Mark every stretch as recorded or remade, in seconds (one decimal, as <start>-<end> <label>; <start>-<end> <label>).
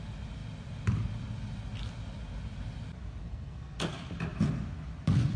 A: 0.0-3.2 recorded; 3.2-3.9 remade; 3.9-5.4 recorded